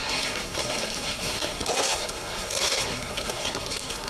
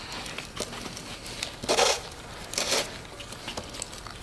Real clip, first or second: second